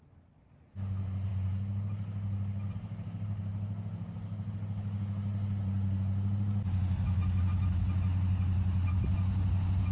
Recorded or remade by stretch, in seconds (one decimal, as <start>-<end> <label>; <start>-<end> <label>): 0.0-9.9 recorded